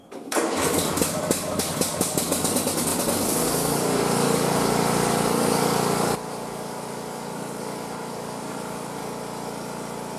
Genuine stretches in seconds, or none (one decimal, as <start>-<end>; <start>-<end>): 9.0-10.2